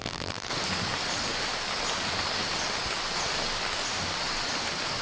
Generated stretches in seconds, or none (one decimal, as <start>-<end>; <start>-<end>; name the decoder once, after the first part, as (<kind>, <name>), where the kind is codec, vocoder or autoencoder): 0.0-0.5 (vocoder, BigVGAN v2)